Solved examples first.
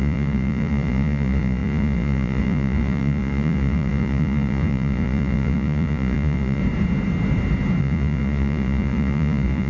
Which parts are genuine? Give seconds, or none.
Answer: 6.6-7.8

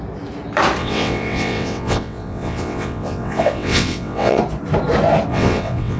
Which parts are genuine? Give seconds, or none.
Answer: 0.0-0.8; 4.4-5.3

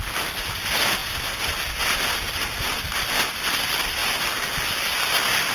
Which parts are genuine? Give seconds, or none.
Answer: 0.0-5.5

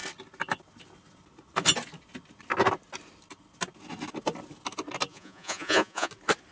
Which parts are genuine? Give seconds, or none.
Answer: 0.0-5.1; 6.1-6.5

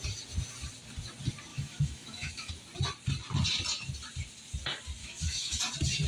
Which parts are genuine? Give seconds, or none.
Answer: 0.0-1.5; 2.5-5.0; 5.6-6.1

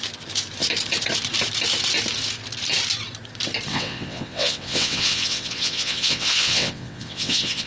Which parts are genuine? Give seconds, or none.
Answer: 0.0-3.7